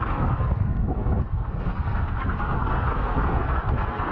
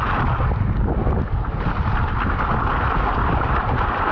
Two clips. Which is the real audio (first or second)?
second